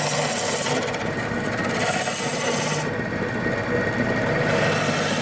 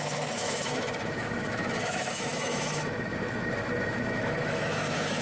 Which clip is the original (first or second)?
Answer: first